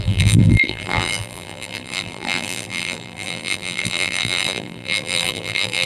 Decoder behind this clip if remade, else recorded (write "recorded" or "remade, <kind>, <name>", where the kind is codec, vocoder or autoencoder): remade, vocoder, BigVGAN v2